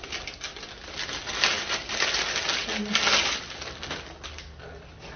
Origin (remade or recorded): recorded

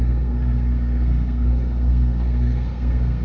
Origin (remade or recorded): remade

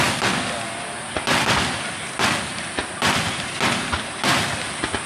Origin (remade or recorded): recorded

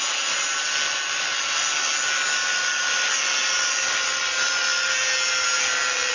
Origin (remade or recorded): recorded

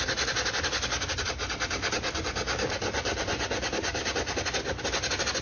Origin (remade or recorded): recorded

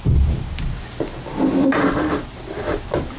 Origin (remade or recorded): recorded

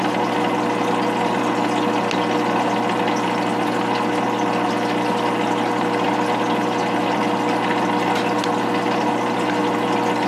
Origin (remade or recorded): recorded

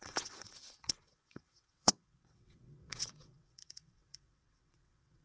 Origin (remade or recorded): remade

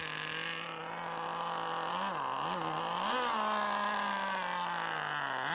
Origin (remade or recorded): recorded